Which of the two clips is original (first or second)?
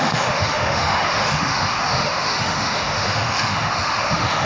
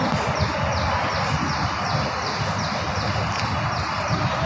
second